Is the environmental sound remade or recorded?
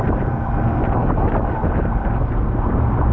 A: recorded